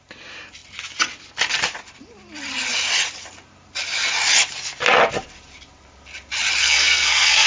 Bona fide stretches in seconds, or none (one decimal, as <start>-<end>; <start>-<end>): 0.0-6.6